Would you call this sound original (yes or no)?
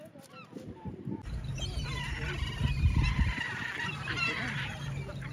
no